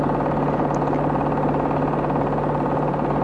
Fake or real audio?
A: real